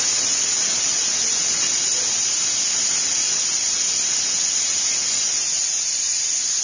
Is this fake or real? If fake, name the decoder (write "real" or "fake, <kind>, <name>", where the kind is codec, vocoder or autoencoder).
real